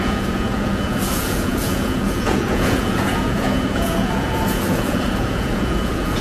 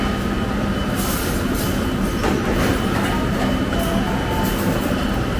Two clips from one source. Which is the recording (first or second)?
second